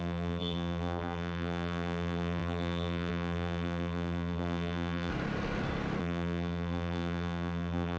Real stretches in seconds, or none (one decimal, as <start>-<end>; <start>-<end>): 5.1-6.0